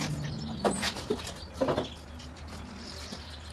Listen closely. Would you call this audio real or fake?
real